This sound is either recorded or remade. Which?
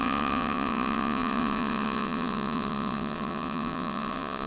remade